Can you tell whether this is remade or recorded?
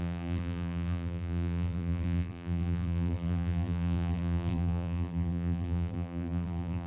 remade